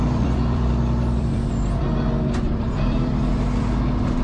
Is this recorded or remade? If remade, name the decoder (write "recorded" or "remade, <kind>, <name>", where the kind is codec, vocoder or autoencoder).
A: remade, vocoder, BigVGAN v2